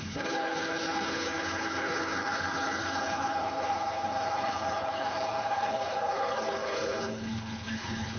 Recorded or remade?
remade